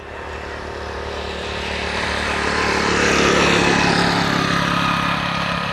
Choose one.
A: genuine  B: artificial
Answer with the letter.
A